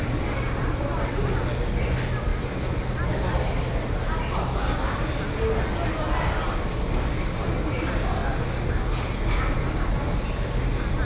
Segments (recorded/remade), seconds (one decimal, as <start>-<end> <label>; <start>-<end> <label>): 0.0-11.0 recorded